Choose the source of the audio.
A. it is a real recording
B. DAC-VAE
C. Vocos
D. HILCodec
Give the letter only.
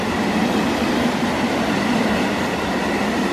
A